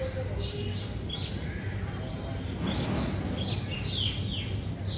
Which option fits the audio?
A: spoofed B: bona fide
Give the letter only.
B